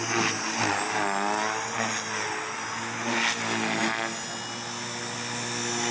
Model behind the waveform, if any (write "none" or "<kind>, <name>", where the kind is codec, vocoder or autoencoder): none